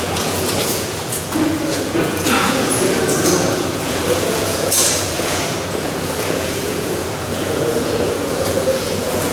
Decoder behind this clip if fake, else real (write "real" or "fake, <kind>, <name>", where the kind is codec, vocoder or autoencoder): fake, vocoder, Vocos